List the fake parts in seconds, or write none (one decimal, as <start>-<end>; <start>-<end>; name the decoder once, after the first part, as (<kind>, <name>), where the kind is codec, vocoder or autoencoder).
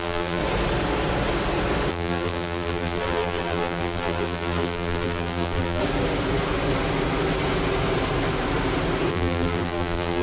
0.0-0.4 (vocoder, BigVGAN v2); 1.9-5.8; 9.1-10.2